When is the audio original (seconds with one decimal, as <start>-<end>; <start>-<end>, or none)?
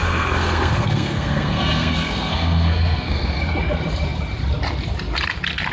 3.4-5.7